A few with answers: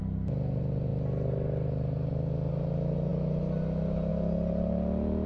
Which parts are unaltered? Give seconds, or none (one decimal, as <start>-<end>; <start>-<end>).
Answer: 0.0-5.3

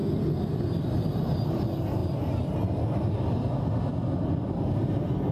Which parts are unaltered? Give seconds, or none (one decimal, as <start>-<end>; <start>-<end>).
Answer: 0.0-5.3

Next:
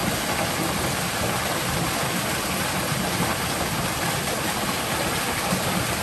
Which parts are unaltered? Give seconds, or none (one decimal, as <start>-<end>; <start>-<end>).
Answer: 0.0-6.0